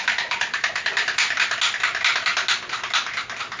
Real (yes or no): yes